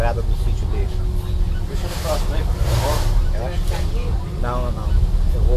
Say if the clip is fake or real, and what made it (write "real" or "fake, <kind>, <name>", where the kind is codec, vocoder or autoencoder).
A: real